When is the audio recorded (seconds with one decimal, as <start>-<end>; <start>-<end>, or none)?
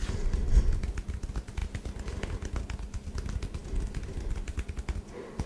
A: 0.0-5.5